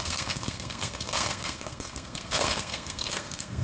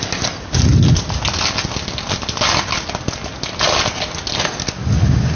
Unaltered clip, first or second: second